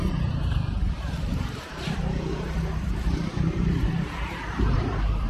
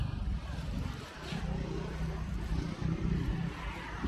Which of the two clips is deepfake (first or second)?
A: first